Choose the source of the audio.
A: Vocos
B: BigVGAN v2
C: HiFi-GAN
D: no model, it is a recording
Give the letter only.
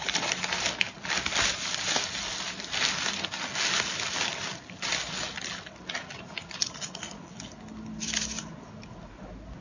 D